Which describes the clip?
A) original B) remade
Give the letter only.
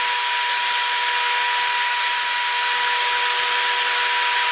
A